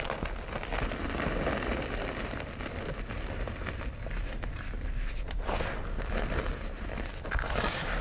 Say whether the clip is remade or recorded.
remade